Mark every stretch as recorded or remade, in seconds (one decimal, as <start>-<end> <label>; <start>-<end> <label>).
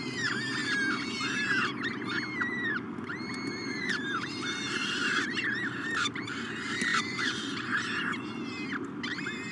0.0-6.9 recorded; 6.9-7.4 remade; 7.4-9.5 recorded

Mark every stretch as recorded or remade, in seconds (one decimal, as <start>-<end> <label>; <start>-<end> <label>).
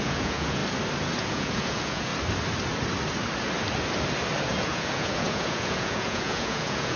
0.0-0.6 remade; 0.6-1.2 recorded; 1.2-2.1 remade; 2.1-4.4 recorded; 4.4-7.0 remade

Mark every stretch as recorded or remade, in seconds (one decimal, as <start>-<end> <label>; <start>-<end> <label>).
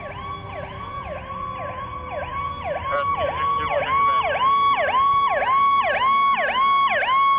0.0-7.4 recorded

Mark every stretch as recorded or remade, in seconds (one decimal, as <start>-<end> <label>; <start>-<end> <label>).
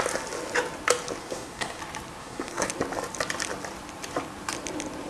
0.0-1.2 recorded; 1.2-1.8 remade; 1.8-2.2 recorded; 2.2-2.7 remade; 2.7-5.1 recorded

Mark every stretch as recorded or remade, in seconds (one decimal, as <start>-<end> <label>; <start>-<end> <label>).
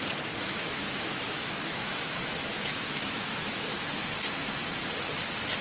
0.0-0.4 recorded; 0.4-3.8 remade; 3.8-5.6 recorded